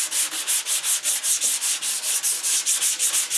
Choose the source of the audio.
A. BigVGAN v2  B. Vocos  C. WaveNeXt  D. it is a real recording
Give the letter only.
D